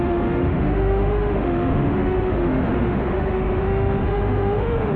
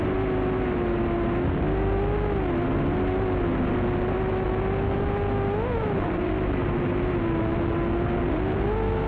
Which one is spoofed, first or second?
first